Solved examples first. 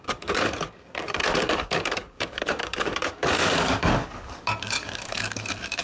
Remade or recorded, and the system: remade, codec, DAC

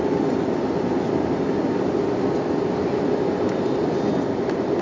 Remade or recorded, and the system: recorded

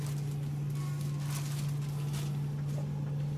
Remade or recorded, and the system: recorded